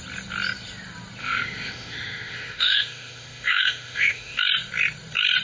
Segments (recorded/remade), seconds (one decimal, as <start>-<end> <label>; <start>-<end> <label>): 0.0-1.2 recorded; 1.2-4.4 remade; 4.4-5.4 recorded